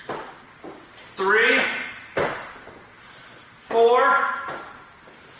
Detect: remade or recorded recorded